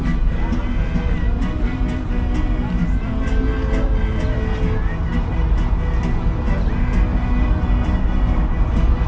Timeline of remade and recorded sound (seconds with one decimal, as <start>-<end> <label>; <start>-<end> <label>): 0.0-9.1 recorded